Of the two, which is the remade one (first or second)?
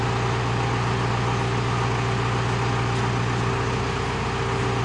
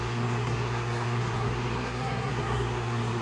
second